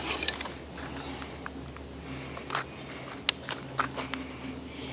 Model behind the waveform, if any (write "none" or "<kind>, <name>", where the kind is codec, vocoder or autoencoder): none